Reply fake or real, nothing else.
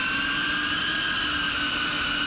real